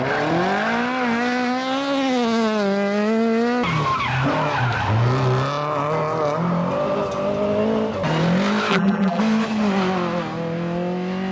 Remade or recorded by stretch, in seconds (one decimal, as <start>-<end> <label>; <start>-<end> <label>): 0.0-8.7 recorded; 8.7-9.2 remade; 9.2-11.3 recorded